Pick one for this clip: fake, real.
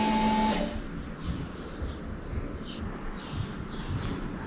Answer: real